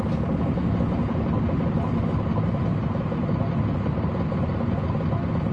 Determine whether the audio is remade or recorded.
recorded